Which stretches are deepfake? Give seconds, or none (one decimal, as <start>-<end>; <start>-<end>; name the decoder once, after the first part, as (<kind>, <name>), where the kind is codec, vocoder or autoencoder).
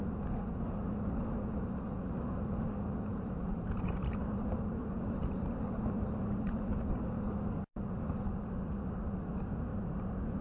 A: 3.1-7.4 (vocoder, BigVGAN v2); 9.7-10.4